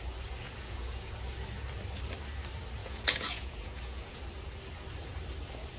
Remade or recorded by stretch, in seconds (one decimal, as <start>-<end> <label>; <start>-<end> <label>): 0.0-0.4 recorded; 0.4-1.1 remade; 1.1-2.8 recorded; 2.8-4.2 remade; 4.2-5.8 recorded